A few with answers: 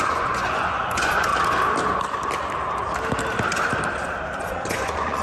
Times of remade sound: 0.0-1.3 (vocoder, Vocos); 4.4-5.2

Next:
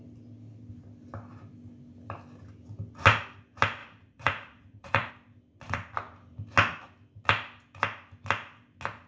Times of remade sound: 3.8-5.1 (vocoder, Vocos)